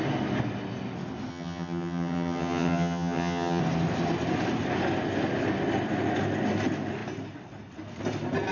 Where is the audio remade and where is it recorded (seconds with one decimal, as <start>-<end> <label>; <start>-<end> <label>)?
0.0-1.3 recorded; 1.3-3.6 remade; 3.6-8.5 recorded